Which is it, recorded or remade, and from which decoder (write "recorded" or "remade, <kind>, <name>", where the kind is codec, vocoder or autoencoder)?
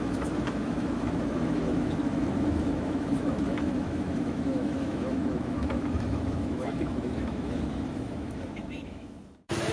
remade, autoencoder, DAC-VAE